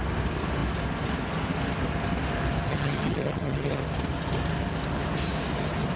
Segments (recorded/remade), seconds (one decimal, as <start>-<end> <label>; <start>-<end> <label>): 0.0-2.7 recorded; 2.7-3.8 remade; 3.8-6.0 recorded